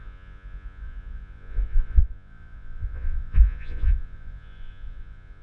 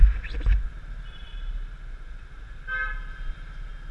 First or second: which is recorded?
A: second